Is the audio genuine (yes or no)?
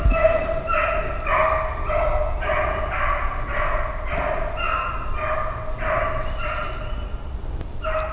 yes